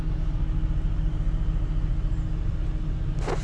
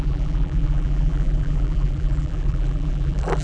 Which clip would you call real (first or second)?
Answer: first